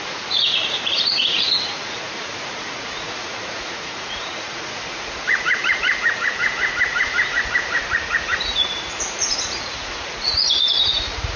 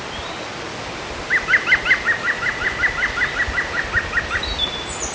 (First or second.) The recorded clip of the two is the second